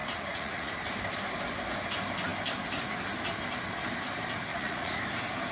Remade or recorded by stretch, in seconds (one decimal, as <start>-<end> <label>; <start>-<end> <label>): 0.0-0.7 remade; 0.7-4.5 recorded; 4.5-5.0 remade; 5.0-5.5 recorded